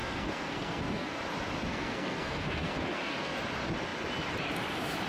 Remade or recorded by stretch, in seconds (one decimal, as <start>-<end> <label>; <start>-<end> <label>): 0.0-1.2 remade; 1.2-1.7 recorded; 1.7-3.4 remade; 3.4-5.1 recorded